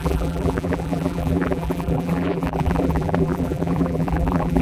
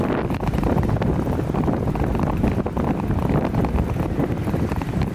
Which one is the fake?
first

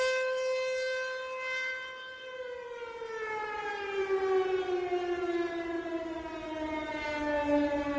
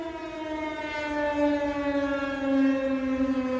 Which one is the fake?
first